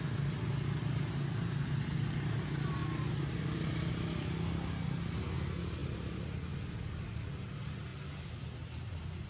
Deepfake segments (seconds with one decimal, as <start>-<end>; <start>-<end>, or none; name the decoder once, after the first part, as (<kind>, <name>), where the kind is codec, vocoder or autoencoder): none